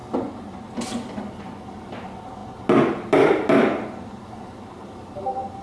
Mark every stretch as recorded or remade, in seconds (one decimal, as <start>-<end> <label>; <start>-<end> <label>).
0.0-5.6 recorded